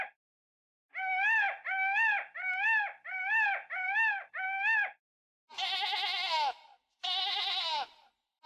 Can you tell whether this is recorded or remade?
recorded